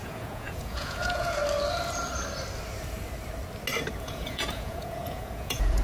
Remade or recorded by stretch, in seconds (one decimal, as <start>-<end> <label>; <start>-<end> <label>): 0.0-1.4 remade; 1.4-4.0 recorded; 4.0-5.8 remade